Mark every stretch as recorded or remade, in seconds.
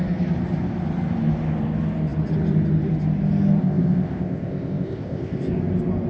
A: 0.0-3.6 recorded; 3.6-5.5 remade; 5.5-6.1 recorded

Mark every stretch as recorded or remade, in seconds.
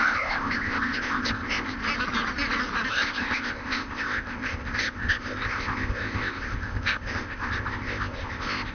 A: 0.0-1.8 remade; 1.8-2.9 recorded; 2.9-8.7 remade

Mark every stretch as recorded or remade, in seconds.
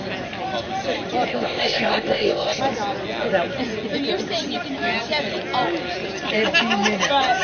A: 0.0-1.3 recorded; 1.3-2.6 remade; 2.6-7.4 recorded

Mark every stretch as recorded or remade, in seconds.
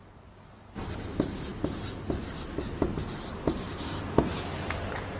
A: 0.0-5.2 recorded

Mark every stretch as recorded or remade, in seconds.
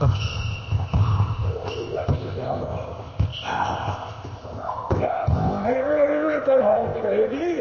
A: 0.0-7.6 remade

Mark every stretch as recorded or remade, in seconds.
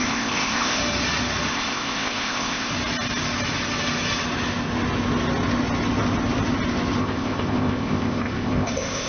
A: 0.0-0.8 remade; 0.8-1.5 recorded; 1.5-2.7 remade; 2.7-7.0 recorded; 7.0-9.1 remade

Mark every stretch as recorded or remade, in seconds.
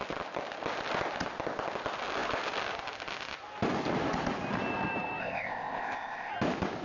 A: 0.0-5.2 recorded; 5.2-6.3 remade; 6.3-6.8 recorded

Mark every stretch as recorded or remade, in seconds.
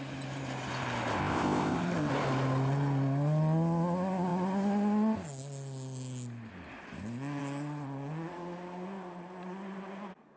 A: 0.0-1.2 recorded; 1.2-2.1 remade; 2.1-10.4 recorded